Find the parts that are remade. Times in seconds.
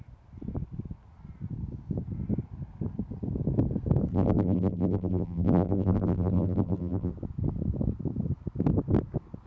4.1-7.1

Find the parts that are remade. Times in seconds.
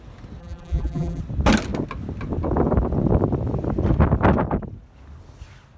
0.4-1.2